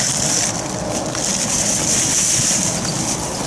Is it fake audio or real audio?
real